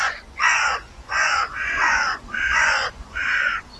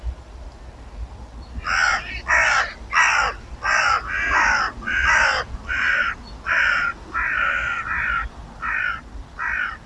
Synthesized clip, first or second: first